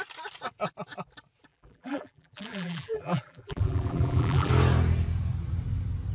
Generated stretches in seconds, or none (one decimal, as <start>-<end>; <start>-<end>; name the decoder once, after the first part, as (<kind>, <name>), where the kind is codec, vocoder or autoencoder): 1.5-4.5 (vocoder, BigVGAN v2)